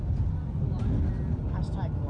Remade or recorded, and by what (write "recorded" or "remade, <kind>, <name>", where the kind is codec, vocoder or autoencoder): recorded